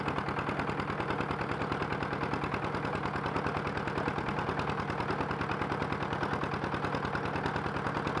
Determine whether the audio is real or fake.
real